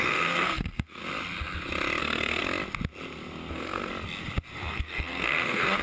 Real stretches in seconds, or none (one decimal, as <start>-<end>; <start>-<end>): 1.0-2.0; 2.4-3.5; 3.9-4.7